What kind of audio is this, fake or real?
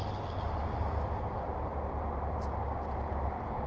real